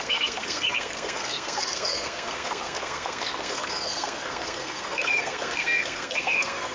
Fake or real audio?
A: fake